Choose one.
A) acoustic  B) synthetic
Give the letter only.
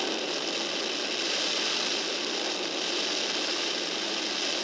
B